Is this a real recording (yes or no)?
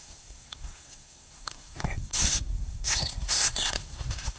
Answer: no